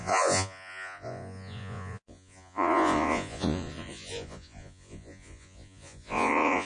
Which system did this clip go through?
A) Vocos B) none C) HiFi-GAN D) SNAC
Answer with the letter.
A